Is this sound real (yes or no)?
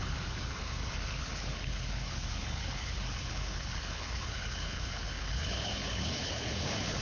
no